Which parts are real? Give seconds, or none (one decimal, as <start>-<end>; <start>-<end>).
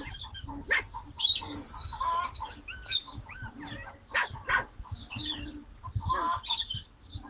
0.0-7.3